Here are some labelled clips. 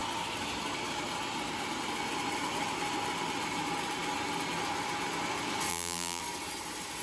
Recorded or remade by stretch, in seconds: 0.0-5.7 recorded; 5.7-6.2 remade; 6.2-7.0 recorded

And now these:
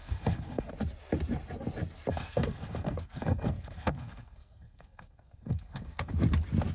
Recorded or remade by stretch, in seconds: 0.0-0.7 remade; 0.7-2.1 recorded; 2.1-6.1 remade; 6.1-6.7 recorded

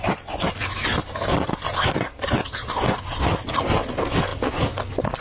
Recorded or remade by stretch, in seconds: 0.0-1.0 recorded; 1.0-1.6 remade; 1.6-5.2 recorded

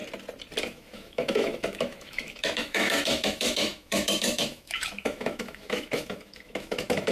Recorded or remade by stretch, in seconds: 0.0-0.6 recorded; 0.6-7.1 remade

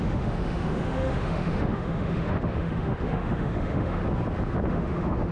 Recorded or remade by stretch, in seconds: 0.0-4.0 remade; 4.0-4.7 recorded; 4.7-5.3 remade

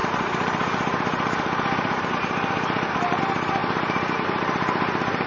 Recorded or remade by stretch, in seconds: 0.0-3.2 remade; 3.2-3.6 recorded; 3.6-5.3 remade

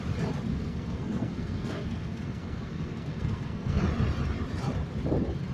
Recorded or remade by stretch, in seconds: 0.0-0.5 recorded; 0.5-3.8 remade; 3.8-5.5 recorded